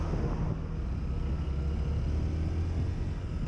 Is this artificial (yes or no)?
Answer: no